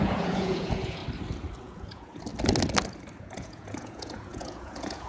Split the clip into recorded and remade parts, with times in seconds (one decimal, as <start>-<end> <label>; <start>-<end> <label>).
0.0-1.0 remade; 1.0-1.6 recorded; 1.6-2.3 remade; 2.3-3.2 recorded; 3.2-5.1 remade